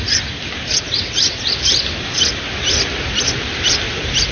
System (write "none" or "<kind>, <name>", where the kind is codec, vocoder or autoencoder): vocoder, BigVGAN v2